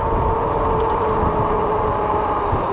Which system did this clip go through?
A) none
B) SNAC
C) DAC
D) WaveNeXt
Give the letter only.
A